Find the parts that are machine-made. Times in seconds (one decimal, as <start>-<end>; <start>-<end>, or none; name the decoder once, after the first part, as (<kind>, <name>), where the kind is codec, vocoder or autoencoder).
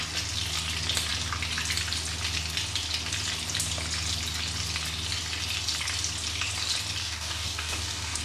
7.0-8.2 (codec, DAC)